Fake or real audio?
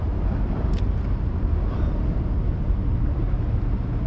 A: real